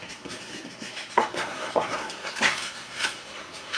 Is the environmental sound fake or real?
fake